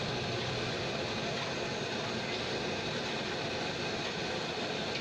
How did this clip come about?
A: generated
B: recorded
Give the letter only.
B